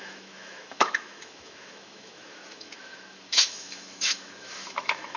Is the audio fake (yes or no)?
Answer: yes